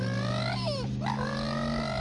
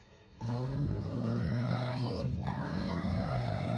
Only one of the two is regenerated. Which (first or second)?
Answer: second